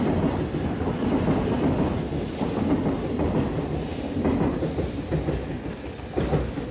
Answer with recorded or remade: recorded